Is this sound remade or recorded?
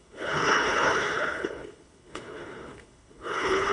remade